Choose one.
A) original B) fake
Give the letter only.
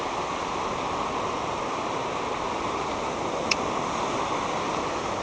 A